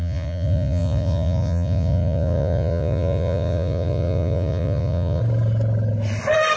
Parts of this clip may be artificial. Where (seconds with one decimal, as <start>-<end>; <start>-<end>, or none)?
0.0-5.2